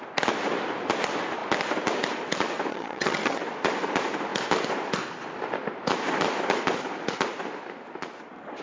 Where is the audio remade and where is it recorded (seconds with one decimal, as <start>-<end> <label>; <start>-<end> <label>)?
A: 0.0-2.7 recorded; 2.7-3.4 remade; 3.4-8.6 recorded